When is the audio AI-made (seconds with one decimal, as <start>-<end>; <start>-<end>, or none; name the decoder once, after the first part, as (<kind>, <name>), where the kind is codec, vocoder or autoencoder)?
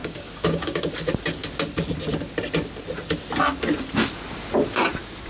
0.0-0.8 (codec, DAC)